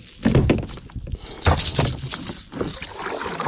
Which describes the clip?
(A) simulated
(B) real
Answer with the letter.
B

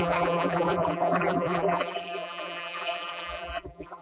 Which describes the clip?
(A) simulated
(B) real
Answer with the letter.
A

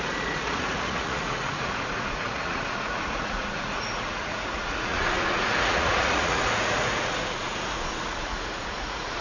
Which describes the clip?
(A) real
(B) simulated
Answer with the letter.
B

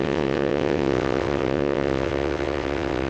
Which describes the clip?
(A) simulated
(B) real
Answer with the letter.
A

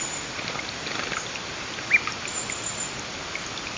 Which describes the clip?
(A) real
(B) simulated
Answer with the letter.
A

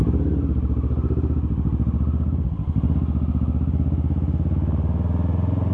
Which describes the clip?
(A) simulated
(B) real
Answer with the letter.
B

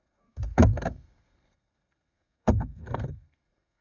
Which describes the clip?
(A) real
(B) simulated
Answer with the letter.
B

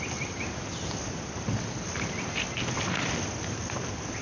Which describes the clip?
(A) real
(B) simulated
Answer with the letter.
A